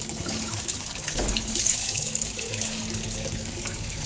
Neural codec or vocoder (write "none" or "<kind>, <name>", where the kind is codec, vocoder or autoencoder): codec, DAC